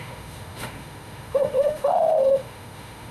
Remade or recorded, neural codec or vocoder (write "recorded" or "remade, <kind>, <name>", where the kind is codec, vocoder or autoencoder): remade, autoencoder, DAC-VAE